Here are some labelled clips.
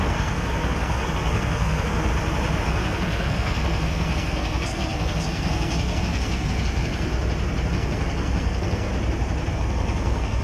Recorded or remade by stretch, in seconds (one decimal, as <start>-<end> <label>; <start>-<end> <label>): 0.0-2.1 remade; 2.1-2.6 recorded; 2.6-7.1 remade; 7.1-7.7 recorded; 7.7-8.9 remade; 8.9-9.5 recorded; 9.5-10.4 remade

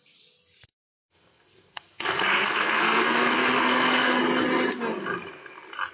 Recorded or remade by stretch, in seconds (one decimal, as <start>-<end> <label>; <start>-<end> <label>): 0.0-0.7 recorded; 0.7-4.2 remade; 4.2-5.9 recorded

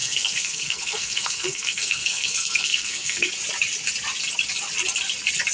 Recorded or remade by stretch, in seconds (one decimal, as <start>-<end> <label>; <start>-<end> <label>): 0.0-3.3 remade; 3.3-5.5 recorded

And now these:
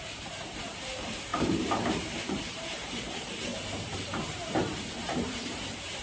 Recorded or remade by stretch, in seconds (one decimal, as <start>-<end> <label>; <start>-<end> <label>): 0.0-6.0 remade

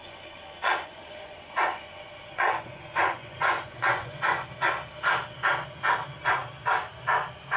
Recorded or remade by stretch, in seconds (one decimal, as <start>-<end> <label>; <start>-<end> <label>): 0.0-4.5 remade; 4.5-7.6 recorded

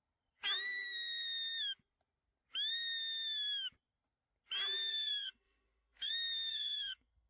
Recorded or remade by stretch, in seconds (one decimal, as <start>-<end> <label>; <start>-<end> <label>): 0.0-4.9 recorded; 4.9-6.1 remade; 6.1-6.5 recorded; 6.5-7.3 remade